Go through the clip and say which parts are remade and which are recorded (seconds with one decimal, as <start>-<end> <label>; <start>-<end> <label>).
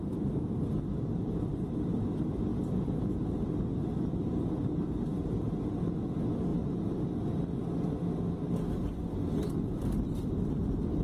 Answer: 0.0-2.5 recorded; 2.5-3.2 remade; 3.2-11.0 recorded